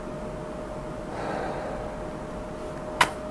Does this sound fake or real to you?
real